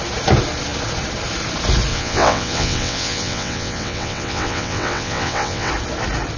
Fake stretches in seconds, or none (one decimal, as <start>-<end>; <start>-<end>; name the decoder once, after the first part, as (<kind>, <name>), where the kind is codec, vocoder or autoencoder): 1.9-5.7 (vocoder, WaveNeXt)